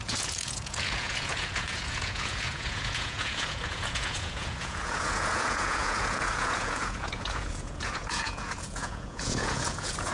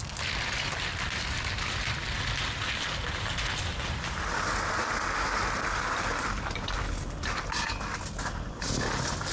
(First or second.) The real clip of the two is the second